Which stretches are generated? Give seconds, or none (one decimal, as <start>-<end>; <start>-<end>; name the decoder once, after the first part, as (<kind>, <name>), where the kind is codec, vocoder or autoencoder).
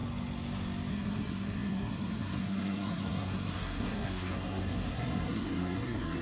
0.9-6.2 (codec, SNAC)